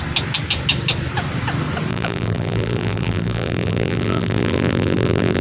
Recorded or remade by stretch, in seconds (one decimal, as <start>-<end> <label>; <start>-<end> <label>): 0.0-1.9 recorded; 1.9-5.4 remade